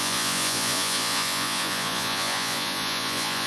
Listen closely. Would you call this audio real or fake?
fake